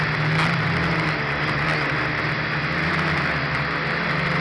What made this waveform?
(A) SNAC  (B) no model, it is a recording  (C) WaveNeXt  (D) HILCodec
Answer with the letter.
B